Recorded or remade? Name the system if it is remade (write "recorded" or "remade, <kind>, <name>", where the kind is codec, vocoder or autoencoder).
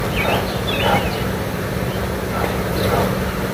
recorded